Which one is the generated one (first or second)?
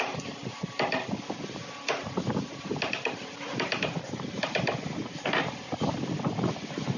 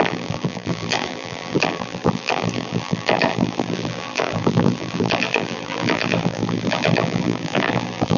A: second